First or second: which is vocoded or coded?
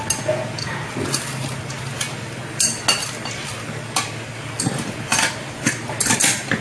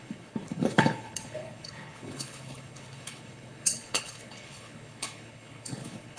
second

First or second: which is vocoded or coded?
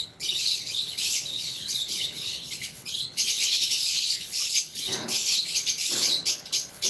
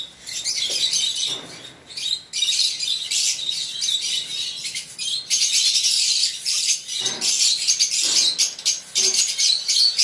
first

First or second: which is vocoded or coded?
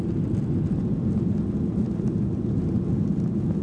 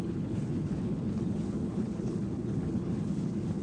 second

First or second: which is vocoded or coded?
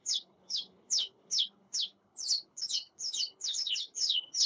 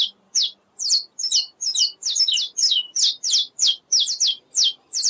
first